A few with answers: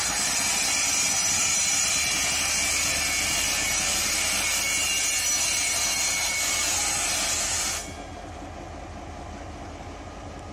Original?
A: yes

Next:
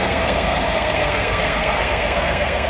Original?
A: no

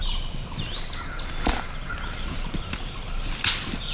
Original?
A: yes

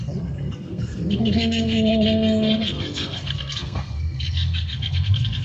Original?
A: no